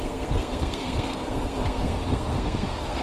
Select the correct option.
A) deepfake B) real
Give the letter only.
A